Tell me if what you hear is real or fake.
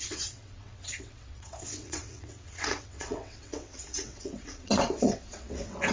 fake